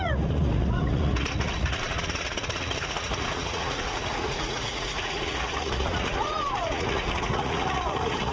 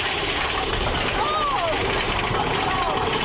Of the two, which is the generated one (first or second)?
first